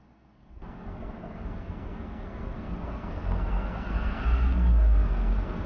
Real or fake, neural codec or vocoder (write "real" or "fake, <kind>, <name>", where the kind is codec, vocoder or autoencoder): fake, codec, SNAC